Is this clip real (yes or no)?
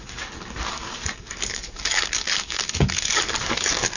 no